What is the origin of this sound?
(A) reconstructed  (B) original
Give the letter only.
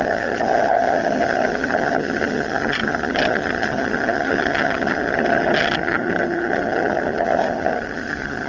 A